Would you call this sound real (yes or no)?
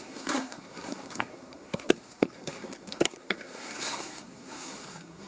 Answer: no